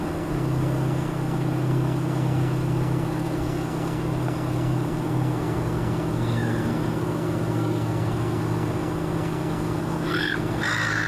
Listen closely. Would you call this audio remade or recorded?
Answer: remade